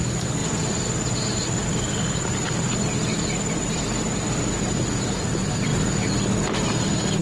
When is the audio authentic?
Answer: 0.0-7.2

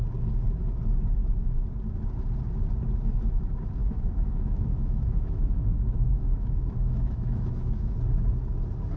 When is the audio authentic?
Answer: 0.0-3.8; 8.0-9.0

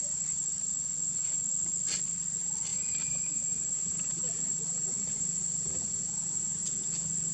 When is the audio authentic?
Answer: 0.0-2.7; 6.0-7.3